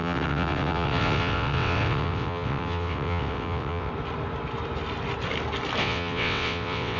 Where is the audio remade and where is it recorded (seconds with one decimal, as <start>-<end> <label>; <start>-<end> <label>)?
0.0-3.9 remade; 3.9-5.8 recorded; 5.8-7.0 remade